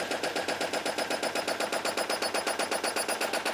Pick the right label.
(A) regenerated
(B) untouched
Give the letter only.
B